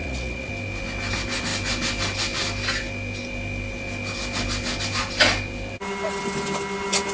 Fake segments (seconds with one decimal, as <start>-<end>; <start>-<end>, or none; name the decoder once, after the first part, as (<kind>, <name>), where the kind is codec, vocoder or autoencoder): 0.0-0.5 (vocoder, Vocos)